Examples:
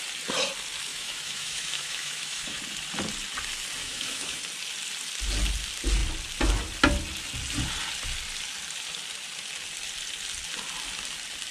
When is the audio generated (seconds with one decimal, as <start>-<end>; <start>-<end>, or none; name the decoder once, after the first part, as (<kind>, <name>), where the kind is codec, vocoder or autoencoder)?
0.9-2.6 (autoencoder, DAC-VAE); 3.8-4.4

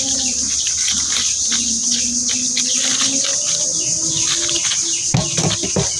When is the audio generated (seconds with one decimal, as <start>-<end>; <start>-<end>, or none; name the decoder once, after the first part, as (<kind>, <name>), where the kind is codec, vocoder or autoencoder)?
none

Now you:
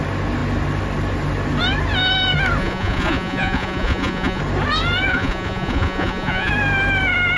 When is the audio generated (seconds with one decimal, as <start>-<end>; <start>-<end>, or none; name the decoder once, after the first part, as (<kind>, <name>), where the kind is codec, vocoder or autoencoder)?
2.6-4.4 (vocoder, Vocos); 5.1-6.5

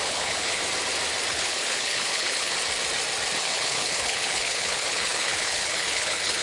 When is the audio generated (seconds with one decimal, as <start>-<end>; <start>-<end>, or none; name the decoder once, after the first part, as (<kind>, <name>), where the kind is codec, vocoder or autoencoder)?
0.0-0.6 (codec, HILCodec); 1.3-2.5; 3.4-6.4